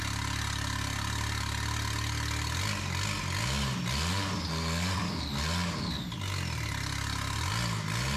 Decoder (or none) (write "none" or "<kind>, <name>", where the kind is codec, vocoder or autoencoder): none